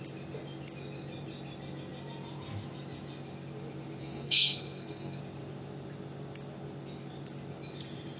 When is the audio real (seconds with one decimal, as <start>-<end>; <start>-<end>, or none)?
0.0-4.0; 5.2-8.2